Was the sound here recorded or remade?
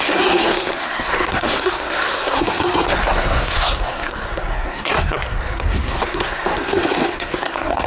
remade